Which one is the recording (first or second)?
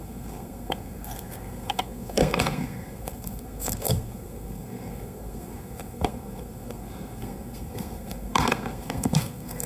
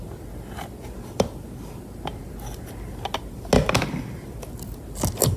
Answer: second